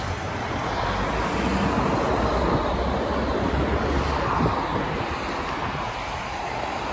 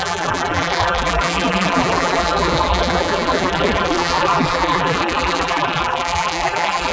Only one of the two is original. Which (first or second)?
first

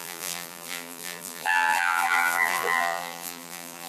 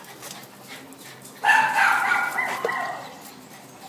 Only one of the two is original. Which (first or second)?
second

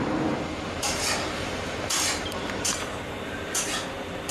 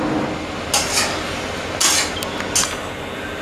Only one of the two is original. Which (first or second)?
second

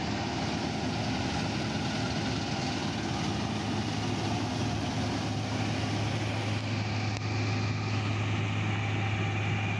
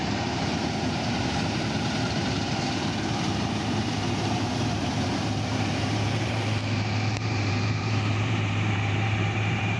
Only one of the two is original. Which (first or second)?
first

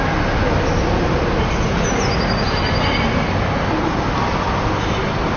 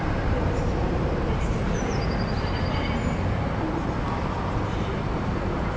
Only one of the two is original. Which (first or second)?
first